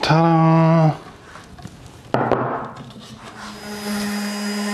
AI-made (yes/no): no